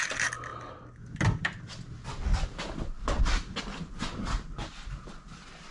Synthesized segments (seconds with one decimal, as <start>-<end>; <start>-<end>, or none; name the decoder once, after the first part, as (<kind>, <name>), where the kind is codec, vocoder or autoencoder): none